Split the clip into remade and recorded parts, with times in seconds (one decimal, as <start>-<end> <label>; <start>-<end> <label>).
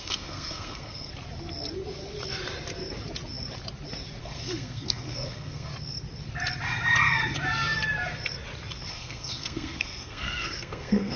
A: 0.0-1.1 remade; 1.1-4.2 recorded; 4.2-5.7 remade; 5.7-8.9 recorded; 8.9-11.2 remade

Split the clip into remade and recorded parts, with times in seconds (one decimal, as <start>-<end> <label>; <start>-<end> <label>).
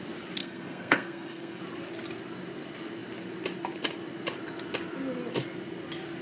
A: 0.0-0.4 recorded; 0.4-1.6 remade; 1.6-6.2 recorded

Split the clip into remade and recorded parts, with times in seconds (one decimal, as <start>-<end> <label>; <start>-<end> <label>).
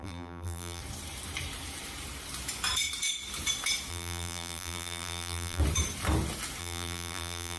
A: 0.0-0.8 remade; 0.8-3.9 recorded; 3.9-5.6 remade; 5.6-6.6 recorded; 6.6-7.6 remade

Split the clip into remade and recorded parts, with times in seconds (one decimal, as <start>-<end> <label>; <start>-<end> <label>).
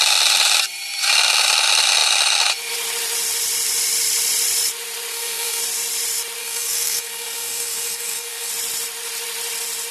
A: 0.0-5.1 recorded; 5.1-5.6 remade; 5.6-6.4 recorded; 6.4-8.5 remade; 8.5-9.9 recorded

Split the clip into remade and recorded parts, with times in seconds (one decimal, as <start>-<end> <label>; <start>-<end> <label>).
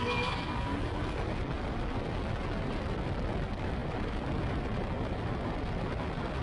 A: 0.0-6.4 recorded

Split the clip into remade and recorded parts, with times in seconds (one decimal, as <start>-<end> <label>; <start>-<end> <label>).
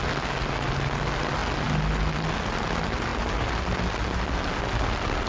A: 0.0-5.3 recorded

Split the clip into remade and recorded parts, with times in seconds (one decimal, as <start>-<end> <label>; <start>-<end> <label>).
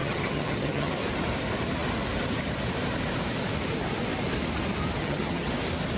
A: 0.0-0.9 remade; 0.9-5.0 recorded; 5.0-5.5 remade; 5.5-6.0 recorded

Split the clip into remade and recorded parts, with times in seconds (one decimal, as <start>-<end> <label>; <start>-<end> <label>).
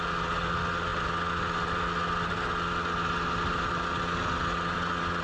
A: 0.0-5.2 recorded